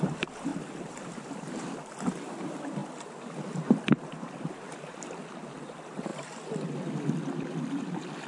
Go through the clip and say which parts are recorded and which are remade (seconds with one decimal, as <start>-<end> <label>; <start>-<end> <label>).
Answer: 0.0-2.8 remade; 2.8-5.6 recorded; 5.6-6.1 remade; 6.1-7.1 recorded; 7.1-8.3 remade

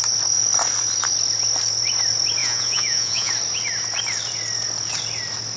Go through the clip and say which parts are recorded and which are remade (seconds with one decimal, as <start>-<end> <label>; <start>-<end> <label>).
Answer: 0.0-2.4 recorded; 2.4-3.3 remade; 3.3-5.6 recorded

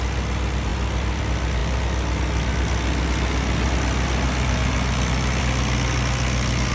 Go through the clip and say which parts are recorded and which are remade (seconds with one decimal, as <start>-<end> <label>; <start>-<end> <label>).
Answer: 0.0-6.7 recorded

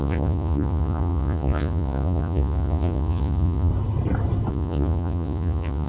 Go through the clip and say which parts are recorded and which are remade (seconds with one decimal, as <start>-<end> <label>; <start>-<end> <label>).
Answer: 0.0-3.7 remade; 3.7-4.5 recorded; 4.5-5.9 remade

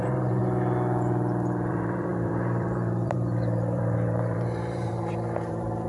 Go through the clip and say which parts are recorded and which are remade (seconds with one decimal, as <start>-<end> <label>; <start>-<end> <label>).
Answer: 0.0-0.4 remade; 0.4-1.7 recorded; 1.7-5.9 remade

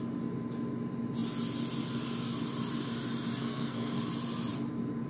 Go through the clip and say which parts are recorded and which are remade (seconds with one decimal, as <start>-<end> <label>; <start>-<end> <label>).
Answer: 0.0-3.4 recorded; 3.4-4.0 remade; 4.0-5.1 recorded

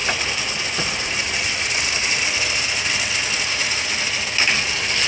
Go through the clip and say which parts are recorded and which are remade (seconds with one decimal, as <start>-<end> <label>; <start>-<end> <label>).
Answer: 0.0-5.1 recorded